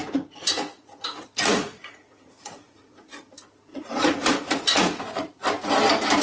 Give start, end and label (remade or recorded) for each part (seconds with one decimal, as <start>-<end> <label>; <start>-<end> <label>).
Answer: 0.0-3.2 remade; 3.2-3.7 recorded; 3.7-5.7 remade; 5.7-6.2 recorded